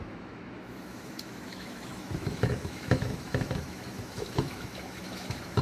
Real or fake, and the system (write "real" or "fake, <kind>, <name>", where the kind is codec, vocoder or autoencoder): fake, autoencoder, DAC-VAE